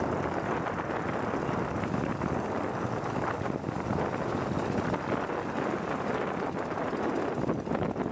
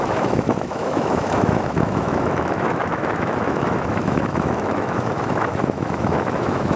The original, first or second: first